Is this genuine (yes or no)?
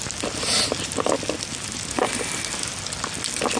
yes